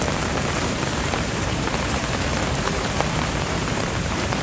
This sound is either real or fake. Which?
fake